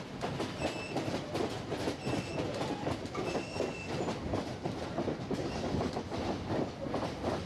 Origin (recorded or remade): recorded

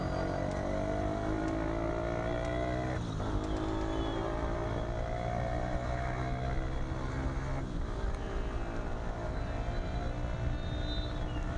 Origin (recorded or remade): recorded